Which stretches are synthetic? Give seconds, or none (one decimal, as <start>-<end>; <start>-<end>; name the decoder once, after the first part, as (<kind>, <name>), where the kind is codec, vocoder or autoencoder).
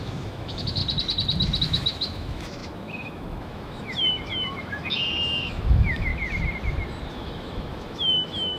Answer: 0.0-0.8 (autoencoder, DAC-VAE); 1.6-6.1; 7.1-8.6